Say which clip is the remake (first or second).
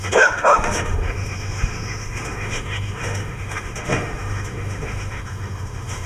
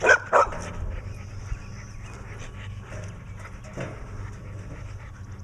first